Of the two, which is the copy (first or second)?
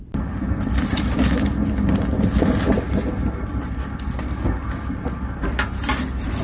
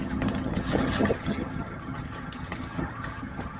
second